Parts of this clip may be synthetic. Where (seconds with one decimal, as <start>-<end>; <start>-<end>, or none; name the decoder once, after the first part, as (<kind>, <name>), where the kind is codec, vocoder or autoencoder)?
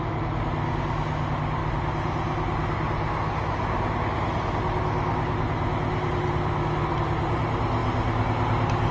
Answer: none